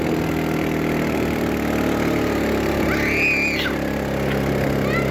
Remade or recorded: recorded